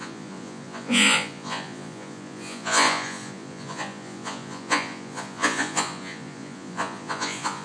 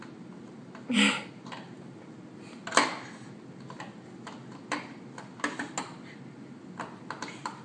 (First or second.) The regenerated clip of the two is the first